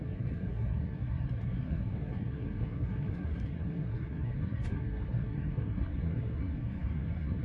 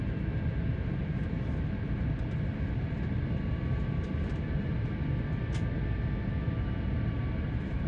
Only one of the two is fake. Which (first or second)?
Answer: first